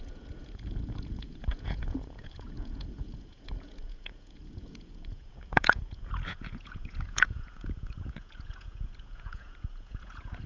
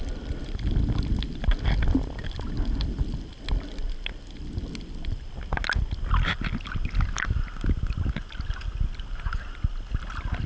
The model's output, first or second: first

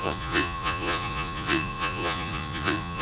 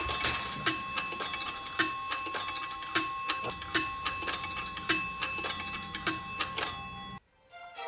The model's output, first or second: first